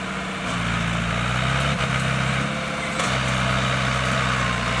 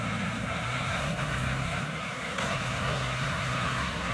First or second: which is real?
first